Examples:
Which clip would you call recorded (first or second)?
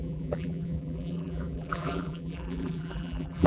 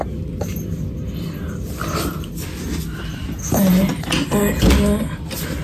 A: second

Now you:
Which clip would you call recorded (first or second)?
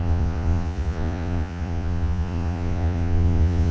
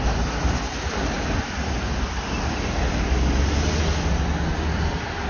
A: second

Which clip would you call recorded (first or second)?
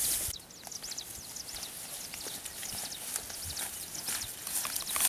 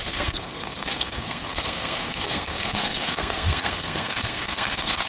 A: first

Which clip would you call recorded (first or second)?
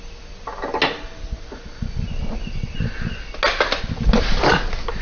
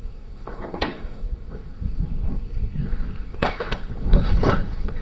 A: first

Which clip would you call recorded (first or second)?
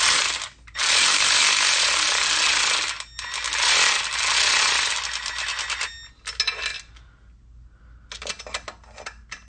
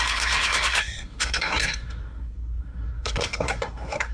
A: first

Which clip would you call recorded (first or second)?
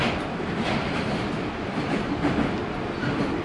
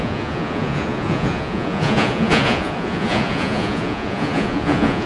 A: first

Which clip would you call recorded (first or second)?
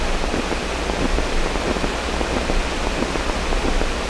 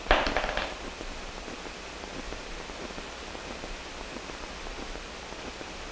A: first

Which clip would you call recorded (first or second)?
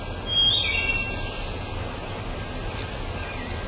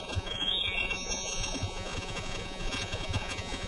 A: first